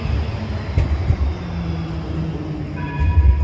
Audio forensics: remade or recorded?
recorded